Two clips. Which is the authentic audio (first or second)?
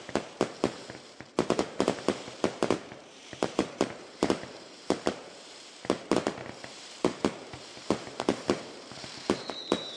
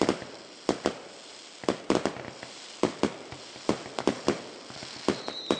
second